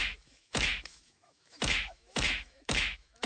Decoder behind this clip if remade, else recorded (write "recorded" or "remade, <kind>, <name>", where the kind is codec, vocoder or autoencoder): remade, autoencoder, DAC-VAE